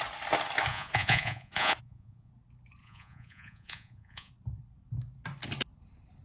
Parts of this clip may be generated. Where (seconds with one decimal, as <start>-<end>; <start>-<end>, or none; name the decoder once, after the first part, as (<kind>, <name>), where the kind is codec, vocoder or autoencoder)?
0.7-2.3 (vocoder, Vocos); 2.8-4.3